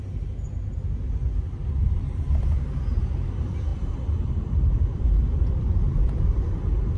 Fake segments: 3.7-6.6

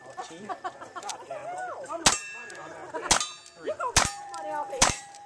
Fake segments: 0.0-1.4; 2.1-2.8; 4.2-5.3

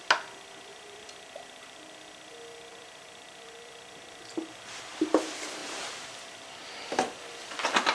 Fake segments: 0.7-1.9; 2.7-5.1; 5.6-6.1; 6.6-7.3

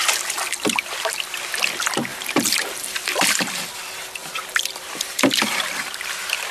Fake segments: 2.1-3.2; 4.2-5.9

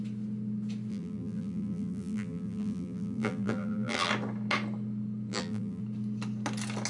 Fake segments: 0.9-4.1; 5.3-5.8

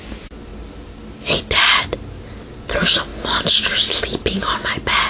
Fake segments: 3.1-4.0

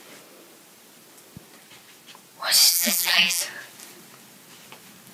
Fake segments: 2.7-3.4